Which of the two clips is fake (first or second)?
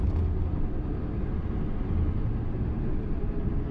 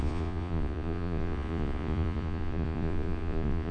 second